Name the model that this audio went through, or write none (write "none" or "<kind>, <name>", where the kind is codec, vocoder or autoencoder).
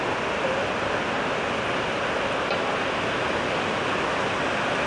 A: none